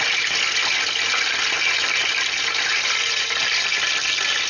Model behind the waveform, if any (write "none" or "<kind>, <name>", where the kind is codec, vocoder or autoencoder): none